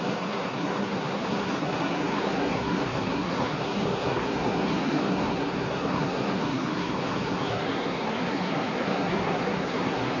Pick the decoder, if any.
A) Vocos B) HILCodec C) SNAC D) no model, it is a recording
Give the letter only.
C